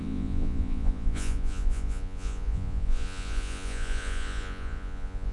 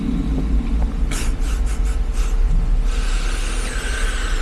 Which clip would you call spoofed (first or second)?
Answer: first